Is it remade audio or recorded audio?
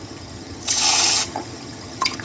remade